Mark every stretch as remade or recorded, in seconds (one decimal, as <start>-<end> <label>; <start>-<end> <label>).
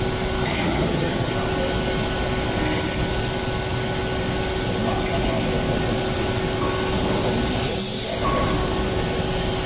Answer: 0.0-0.6 recorded; 0.6-1.3 remade; 1.3-9.7 recorded